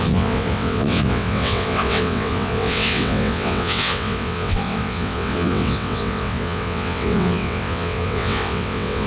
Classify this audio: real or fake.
fake